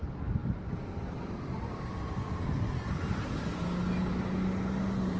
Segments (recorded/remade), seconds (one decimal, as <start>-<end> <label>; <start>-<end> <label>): 0.0-5.2 recorded